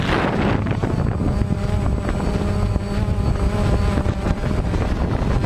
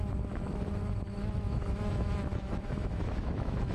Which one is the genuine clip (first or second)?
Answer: first